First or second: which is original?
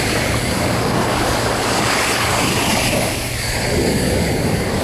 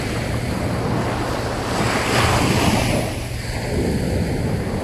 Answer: second